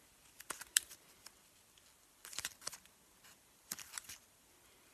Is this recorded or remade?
remade